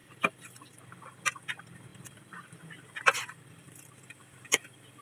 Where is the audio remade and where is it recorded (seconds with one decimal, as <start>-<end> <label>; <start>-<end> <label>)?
0.0-0.6 remade; 0.6-1.9 recorded; 1.9-5.0 remade